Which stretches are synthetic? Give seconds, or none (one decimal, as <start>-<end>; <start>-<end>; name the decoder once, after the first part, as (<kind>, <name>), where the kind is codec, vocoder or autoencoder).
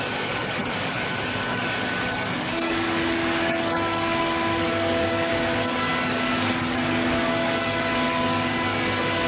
0.0-9.3 (codec, DAC)